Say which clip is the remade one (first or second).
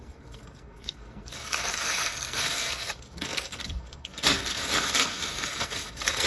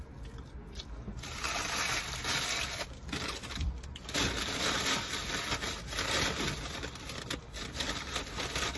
first